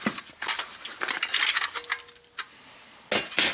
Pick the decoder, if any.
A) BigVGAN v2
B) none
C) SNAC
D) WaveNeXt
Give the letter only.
B